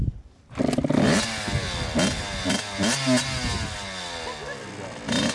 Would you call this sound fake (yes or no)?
no